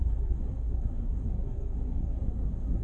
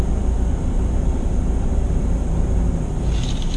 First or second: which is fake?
first